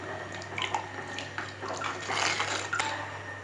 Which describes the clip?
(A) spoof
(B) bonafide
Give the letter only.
B